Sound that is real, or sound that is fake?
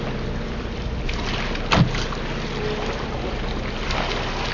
real